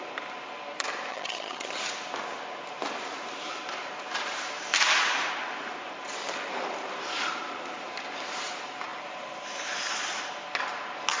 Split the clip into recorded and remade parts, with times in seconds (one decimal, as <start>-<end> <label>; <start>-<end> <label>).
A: 0.0-1.1 recorded; 1.1-1.7 remade; 1.7-11.2 recorded